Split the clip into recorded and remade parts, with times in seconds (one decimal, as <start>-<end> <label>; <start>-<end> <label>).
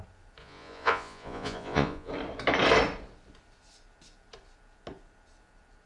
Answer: 0.0-0.4 recorded; 0.4-2.1 remade; 2.1-5.9 recorded